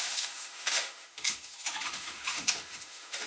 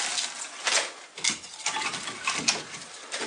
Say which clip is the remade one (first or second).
first